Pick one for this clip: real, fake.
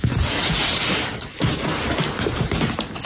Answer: real